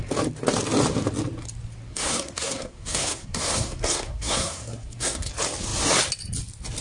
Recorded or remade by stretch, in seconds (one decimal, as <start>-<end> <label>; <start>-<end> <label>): 0.0-1.9 recorded; 1.9-5.3 remade; 5.3-6.8 recorded